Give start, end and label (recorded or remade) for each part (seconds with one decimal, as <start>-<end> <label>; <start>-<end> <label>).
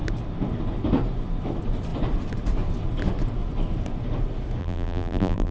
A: 0.0-4.6 recorded; 4.6-5.5 remade